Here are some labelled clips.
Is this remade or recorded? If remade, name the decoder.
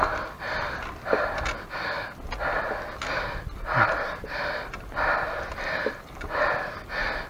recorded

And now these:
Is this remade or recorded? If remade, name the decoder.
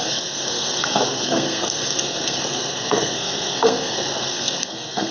remade, codec, SNAC